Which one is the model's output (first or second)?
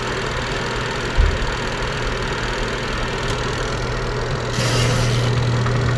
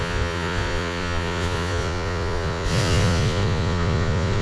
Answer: second